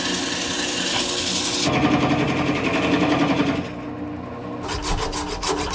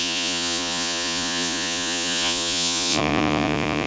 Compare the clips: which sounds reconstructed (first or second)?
second